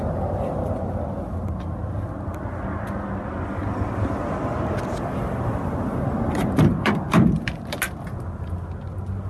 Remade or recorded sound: recorded